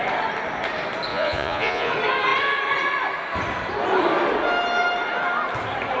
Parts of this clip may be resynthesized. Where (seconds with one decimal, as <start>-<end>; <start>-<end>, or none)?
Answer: 1.1-1.9